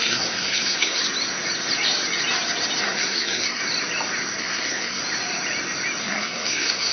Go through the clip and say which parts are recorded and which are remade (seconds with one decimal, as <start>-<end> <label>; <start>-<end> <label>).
0.0-1.0 remade; 1.0-2.8 recorded; 2.8-3.6 remade; 3.6-4.4 recorded; 4.4-5.0 remade; 5.0-6.0 recorded; 6.0-6.9 remade